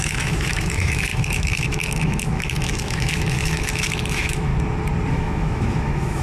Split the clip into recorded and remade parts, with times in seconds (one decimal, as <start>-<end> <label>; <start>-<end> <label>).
0.0-4.5 remade; 4.5-5.1 recorded; 5.1-6.2 remade